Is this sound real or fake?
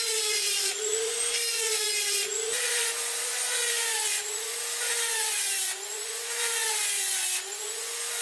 fake